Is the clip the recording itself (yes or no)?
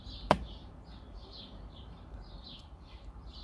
no